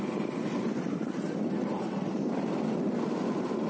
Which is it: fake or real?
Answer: real